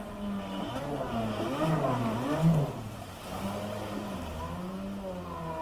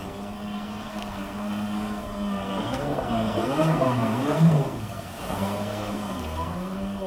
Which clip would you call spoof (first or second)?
second